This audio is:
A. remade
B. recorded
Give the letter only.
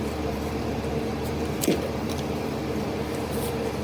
A